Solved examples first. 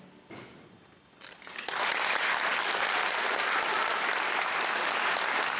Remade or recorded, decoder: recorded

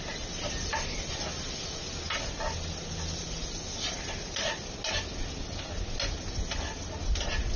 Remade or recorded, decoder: recorded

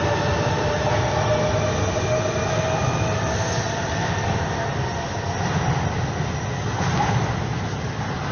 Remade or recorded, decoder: recorded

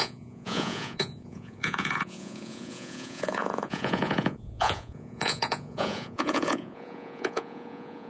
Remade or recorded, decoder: remade, vocoder, Vocos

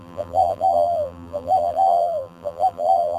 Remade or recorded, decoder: remade, vocoder, BigVGAN v2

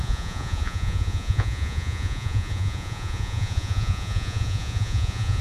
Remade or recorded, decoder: remade, vocoder, Vocos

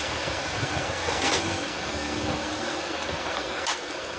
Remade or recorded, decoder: remade, codec, SNAC